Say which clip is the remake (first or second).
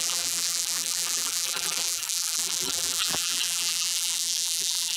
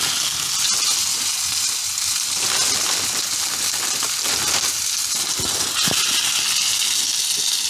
first